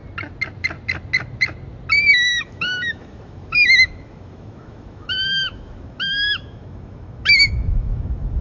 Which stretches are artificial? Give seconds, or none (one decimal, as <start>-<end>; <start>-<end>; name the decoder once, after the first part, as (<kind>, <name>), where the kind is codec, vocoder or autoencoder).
2.1-8.4 (autoencoder, DAC-VAE)